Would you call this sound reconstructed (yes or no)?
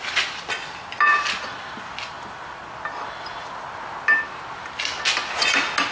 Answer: no